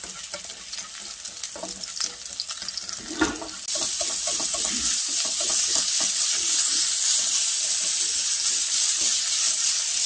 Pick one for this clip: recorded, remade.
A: recorded